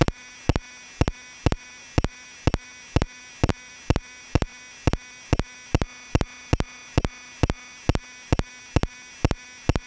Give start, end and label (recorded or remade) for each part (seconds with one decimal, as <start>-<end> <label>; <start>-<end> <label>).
0.0-9.9 recorded